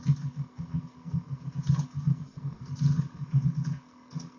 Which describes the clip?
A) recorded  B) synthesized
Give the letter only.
B